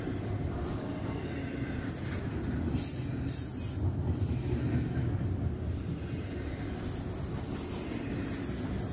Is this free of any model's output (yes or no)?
yes